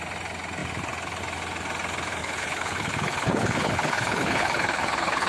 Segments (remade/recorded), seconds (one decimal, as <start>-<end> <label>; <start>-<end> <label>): 0.0-2.2 recorded; 2.2-5.3 remade